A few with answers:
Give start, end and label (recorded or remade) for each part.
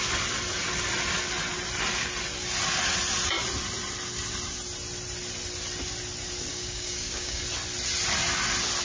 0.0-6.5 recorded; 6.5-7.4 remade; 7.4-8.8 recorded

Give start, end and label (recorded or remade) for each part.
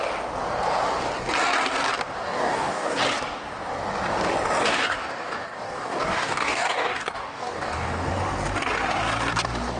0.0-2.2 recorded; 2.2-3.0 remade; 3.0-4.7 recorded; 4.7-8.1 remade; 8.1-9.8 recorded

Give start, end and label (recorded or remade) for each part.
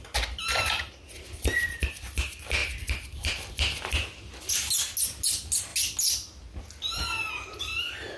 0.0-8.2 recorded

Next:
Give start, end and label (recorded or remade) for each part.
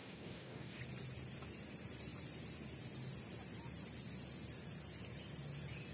0.0-0.8 remade; 0.8-5.9 recorded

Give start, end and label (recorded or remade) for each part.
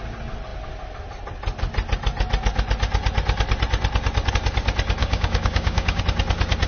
0.0-5.0 recorded; 5.0-6.0 remade; 6.0-6.7 recorded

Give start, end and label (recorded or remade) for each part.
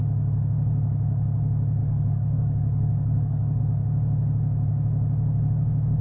0.0-1.8 recorded; 1.8-3.6 remade; 3.6-6.0 recorded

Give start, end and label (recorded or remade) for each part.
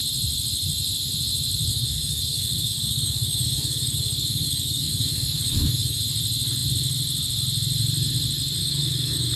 0.0-1.7 recorded; 1.7-6.0 remade; 6.0-8.6 recorded; 8.6-9.4 remade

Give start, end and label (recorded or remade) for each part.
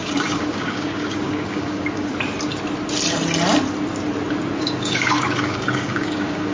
0.0-2.1 remade; 2.1-4.6 recorded; 4.6-6.5 remade